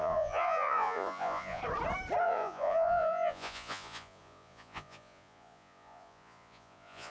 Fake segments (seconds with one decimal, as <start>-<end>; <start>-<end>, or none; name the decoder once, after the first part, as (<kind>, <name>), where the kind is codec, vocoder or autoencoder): 0.0-1.6 (vocoder, Vocos); 2.2-7.1